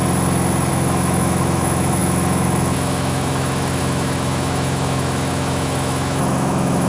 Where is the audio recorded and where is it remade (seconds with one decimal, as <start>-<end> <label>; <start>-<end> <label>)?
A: 0.0-0.7 recorded; 0.7-6.9 remade